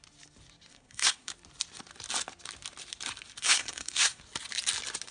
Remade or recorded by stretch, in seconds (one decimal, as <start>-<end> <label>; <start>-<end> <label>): 0.0-0.7 recorded; 0.7-1.3 remade; 1.3-3.4 recorded; 3.4-4.2 remade; 4.2-5.1 recorded